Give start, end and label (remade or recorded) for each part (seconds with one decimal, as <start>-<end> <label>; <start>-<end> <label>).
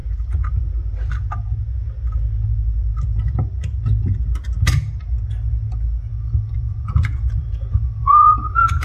0.0-6.1 recorded; 6.1-8.8 remade